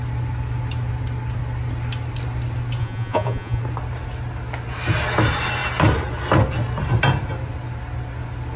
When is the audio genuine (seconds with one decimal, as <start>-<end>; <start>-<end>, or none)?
0.0-2.8; 3.6-8.6